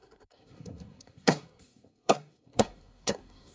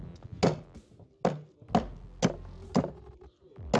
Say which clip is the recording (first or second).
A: second